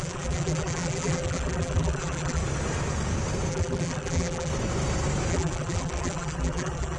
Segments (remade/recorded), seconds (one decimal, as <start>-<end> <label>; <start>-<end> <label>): 0.0-2.4 remade; 2.4-3.5 recorded; 3.5-4.5 remade; 4.5-5.3 recorded; 5.3-7.0 remade